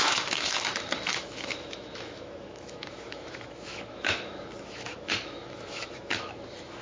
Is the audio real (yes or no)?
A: no